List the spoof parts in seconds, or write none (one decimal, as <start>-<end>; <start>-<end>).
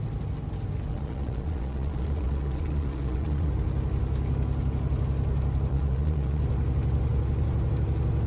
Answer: 0.9-3.5; 5.7-6.4